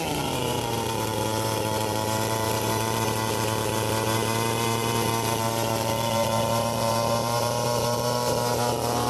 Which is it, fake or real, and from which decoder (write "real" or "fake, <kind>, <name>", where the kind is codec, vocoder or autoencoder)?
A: fake, vocoder, BigVGAN v2